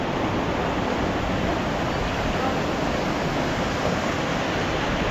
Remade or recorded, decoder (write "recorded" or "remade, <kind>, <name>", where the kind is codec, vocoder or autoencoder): recorded